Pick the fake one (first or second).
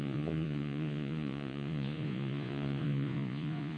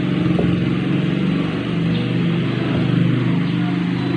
first